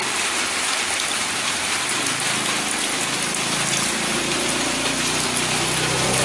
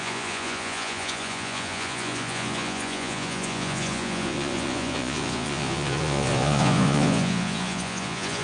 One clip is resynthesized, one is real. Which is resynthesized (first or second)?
second